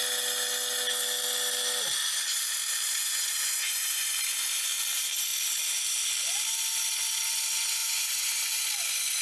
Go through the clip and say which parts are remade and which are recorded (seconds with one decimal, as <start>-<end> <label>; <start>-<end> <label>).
0.0-3.0 recorded; 3.0-4.2 remade; 4.2-7.8 recorded; 7.8-8.4 remade; 8.4-9.2 recorded